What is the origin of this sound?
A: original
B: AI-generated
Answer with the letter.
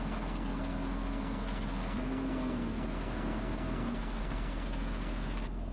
B